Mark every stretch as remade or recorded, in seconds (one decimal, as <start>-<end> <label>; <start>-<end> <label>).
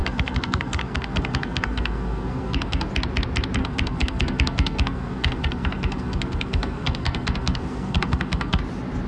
0.0-2.9 remade; 2.9-3.6 recorded; 3.6-8.6 remade; 8.6-9.1 recorded